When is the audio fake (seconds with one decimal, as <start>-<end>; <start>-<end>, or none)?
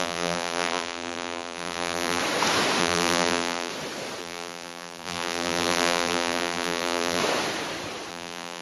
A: 0.0-2.2; 2.8-3.7; 4.2-7.2; 8.1-8.6